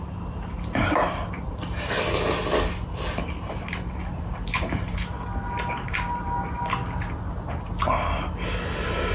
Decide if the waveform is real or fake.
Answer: real